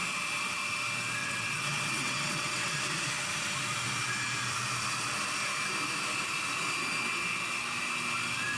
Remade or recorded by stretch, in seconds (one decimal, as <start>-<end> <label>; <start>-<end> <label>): 0.0-1.2 recorded; 1.2-2.8 remade; 2.8-8.6 recorded